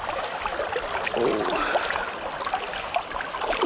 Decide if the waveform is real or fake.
real